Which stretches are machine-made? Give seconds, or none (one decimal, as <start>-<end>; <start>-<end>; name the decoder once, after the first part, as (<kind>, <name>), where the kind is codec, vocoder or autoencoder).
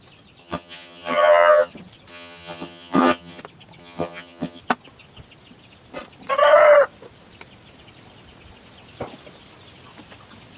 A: 0.4-1.7 (vocoder, HiFi-GAN); 2.1-3.4; 3.8-4.6